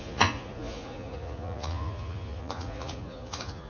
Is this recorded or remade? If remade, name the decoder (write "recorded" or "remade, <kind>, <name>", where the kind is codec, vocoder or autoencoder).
remade, vocoder, Vocos